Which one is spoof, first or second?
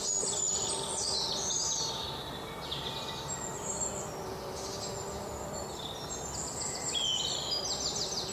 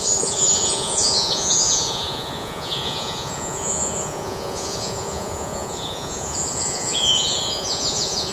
second